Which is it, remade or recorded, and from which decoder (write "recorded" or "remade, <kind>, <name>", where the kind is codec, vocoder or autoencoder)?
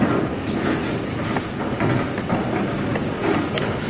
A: recorded